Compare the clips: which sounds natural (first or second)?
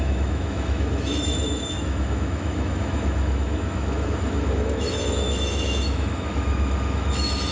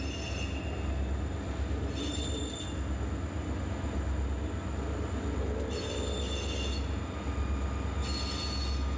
second